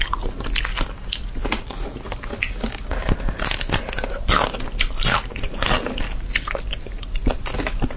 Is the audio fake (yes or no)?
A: no